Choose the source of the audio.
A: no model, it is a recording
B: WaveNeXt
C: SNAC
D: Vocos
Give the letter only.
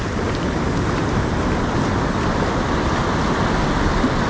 A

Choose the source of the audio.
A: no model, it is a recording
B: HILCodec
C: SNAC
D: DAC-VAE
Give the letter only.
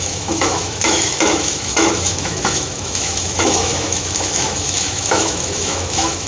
D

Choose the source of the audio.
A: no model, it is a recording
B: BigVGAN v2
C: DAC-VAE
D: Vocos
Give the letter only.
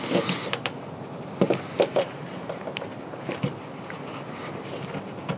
A